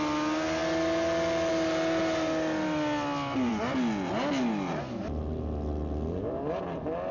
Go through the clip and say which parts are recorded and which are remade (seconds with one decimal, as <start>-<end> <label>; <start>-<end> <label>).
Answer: 0.0-7.1 recorded